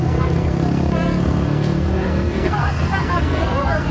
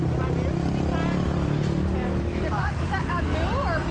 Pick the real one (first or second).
second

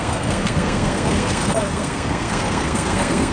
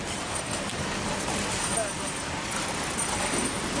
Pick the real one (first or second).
second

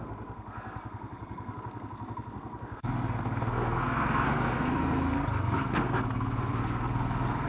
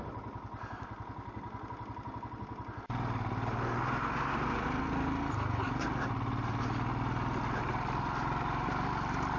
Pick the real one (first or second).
second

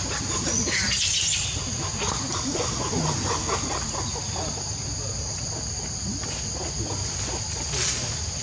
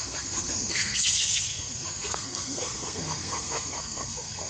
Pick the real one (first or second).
first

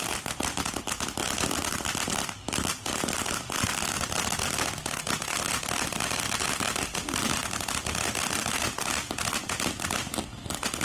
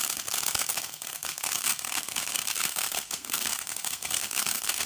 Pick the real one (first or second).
first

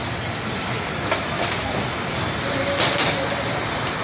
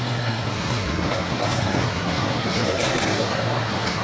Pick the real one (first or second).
first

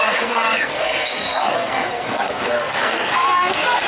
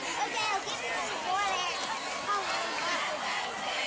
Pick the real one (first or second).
second